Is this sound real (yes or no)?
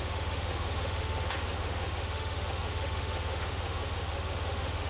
no